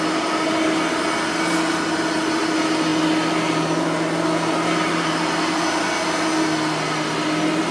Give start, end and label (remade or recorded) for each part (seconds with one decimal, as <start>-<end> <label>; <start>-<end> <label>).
0.0-7.7 recorded